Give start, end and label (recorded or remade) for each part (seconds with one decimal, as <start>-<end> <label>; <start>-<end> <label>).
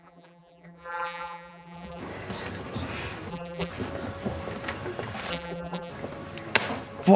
0.0-2.0 remade; 2.0-3.3 recorded; 3.3-3.7 remade; 3.7-5.3 recorded; 5.3-5.9 remade; 5.9-7.2 recorded